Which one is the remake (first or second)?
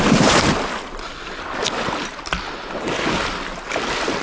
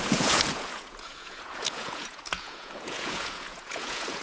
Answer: second